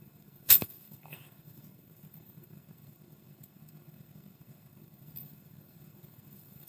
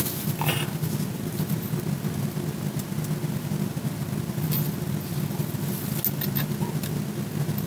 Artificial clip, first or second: first